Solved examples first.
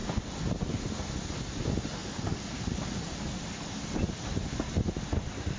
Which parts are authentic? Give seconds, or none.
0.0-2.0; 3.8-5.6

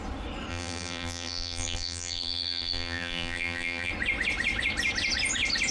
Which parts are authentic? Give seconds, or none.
0.0-0.5; 3.9-5.7